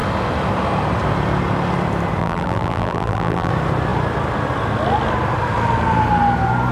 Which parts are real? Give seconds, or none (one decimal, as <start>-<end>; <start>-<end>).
0.0-2.2; 3.5-6.7